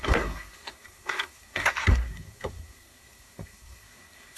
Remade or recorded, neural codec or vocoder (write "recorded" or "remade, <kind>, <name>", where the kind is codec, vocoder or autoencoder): remade, codec, SNAC